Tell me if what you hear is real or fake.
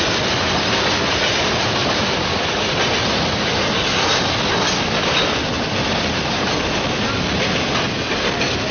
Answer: real